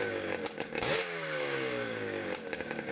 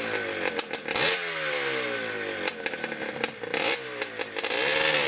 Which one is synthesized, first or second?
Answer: first